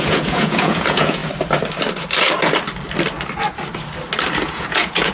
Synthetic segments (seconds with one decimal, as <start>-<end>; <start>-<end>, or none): 0.0-1.2; 4.3-5.1